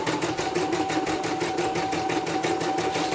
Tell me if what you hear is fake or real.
real